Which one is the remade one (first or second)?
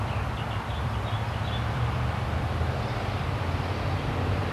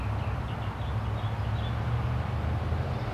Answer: first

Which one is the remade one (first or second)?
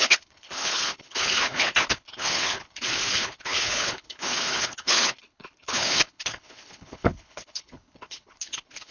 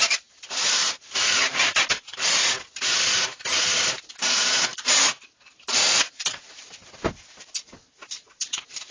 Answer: first